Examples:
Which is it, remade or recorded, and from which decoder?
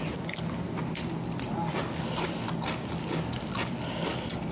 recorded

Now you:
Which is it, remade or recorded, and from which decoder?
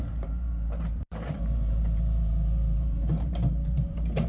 remade, vocoder, BigVGAN v2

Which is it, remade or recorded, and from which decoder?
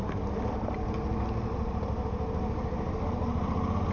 recorded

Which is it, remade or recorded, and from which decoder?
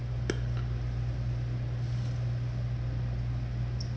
recorded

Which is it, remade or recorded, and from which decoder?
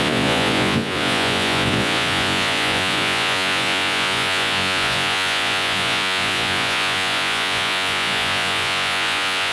remade, vocoder, Vocos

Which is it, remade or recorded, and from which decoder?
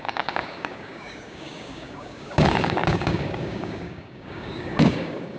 remade, codec, DAC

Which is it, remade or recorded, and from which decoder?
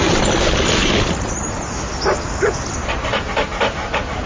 recorded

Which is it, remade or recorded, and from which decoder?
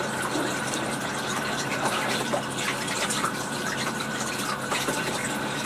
remade, vocoder, BigVGAN v2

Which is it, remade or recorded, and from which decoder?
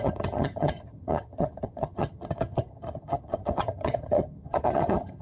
remade, vocoder, HiFi-GAN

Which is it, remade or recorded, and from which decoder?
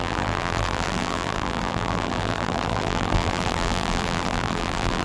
remade, vocoder, BigVGAN v2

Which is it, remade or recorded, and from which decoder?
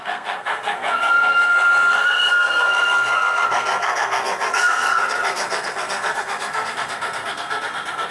remade, codec, SNAC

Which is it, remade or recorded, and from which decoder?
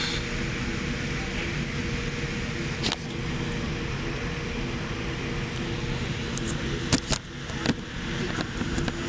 recorded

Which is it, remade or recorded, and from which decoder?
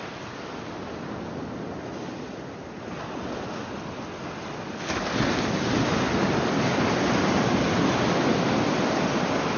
recorded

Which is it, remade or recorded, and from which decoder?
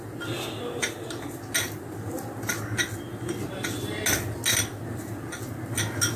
recorded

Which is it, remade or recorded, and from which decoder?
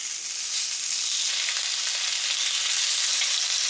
recorded